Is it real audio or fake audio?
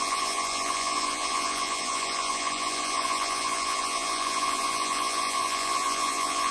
fake